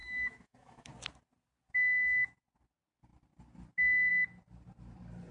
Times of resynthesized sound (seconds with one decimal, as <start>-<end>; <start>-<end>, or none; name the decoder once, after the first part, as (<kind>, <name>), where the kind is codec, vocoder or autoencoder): 0.0-0.9 (autoencoder, DAC-VAE)

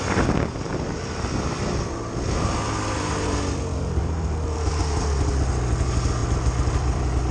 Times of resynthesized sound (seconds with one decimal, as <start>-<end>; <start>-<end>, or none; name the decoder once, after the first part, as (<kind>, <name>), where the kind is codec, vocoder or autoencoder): 0.7-1.6 (vocoder, BigVGAN v2); 6.2-7.3

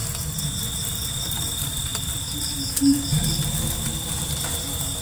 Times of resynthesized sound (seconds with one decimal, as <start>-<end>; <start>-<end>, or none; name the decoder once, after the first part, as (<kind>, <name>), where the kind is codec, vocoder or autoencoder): 0.7-1.9 (vocoder, BigVGAN v2); 2.5-5.0